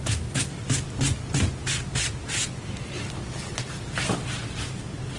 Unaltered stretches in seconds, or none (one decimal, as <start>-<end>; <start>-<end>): 0.0-5.2